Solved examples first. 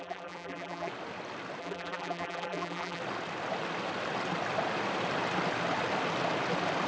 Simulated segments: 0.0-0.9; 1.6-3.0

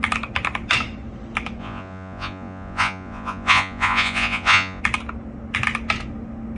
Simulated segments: 1.6-4.8

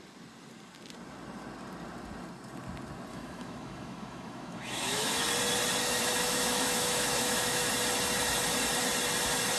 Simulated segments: 3.1-5.3; 5.8-7.7

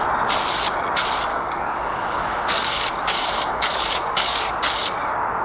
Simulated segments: 1.3-4.5